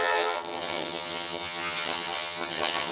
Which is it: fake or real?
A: fake